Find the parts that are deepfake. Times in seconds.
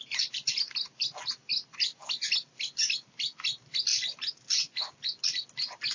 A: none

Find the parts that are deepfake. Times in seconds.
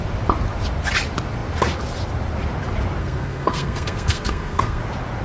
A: 3.0-4.8 (codec, SNAC)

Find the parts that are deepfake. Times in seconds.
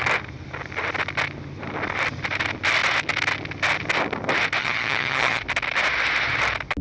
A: 4.6-5.4 (vocoder, HiFi-GAN)